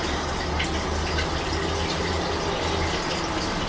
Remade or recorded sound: recorded